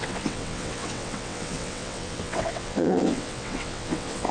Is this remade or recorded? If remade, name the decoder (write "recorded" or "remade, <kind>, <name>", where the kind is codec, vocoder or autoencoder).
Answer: remade, vocoder, WaveNeXt